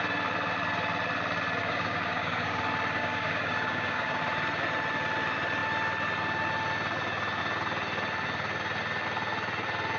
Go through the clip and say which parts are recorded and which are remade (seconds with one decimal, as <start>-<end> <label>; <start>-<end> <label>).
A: 0.0-1.6 recorded; 1.6-2.6 remade; 2.6-3.0 recorded; 3.0-4.2 remade; 4.2-10.0 recorded